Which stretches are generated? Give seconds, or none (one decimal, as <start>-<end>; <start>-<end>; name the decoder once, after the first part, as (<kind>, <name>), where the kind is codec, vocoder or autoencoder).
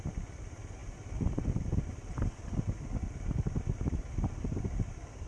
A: none